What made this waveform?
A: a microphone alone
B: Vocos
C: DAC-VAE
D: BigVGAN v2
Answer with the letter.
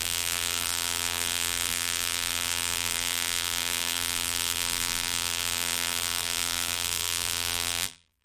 D